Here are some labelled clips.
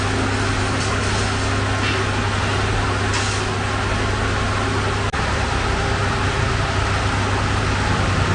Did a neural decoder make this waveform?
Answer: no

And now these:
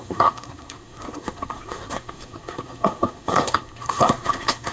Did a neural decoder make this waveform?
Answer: yes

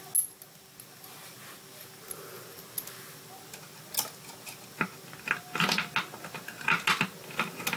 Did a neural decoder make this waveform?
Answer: no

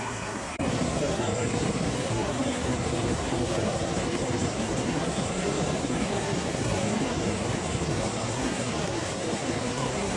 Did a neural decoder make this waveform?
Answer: yes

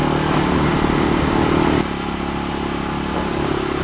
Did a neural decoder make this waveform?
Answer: no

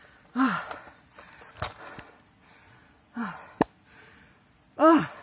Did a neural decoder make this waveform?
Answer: no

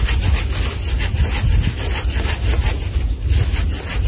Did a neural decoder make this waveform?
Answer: no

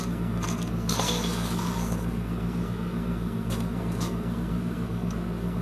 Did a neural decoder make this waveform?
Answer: yes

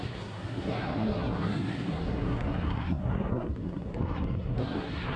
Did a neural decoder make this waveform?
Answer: yes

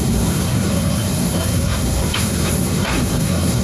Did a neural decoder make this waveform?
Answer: yes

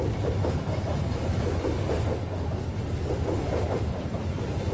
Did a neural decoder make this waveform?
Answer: no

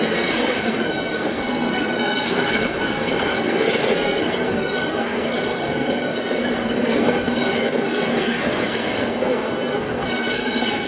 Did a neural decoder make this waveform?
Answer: yes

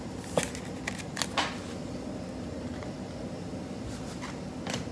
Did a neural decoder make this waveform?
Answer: no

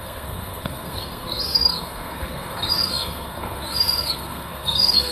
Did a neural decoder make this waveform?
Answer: yes